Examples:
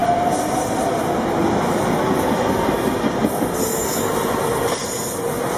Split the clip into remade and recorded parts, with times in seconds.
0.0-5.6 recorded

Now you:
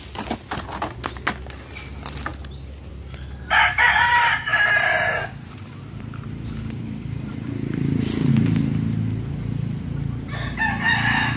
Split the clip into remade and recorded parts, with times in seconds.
0.0-4.5 recorded; 4.5-8.3 remade; 8.3-11.4 recorded

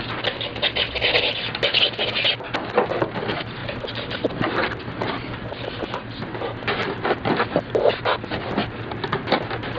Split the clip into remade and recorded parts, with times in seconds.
0.0-3.6 recorded; 3.6-6.2 remade; 6.2-9.8 recorded

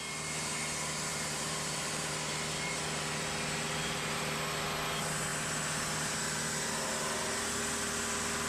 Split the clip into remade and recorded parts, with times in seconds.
0.0-1.1 recorded; 1.1-2.1 remade; 2.1-8.5 recorded

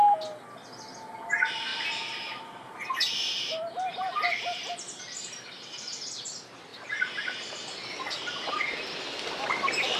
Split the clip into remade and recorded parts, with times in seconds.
0.0-1.7 recorded; 1.7-5.0 remade; 5.0-10.0 recorded

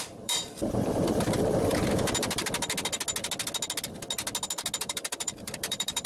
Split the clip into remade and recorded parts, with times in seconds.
0.0-1.7 remade; 1.7-4.8 recorded; 4.8-6.1 remade